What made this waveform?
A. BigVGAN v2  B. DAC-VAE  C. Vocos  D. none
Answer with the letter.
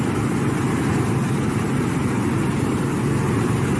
D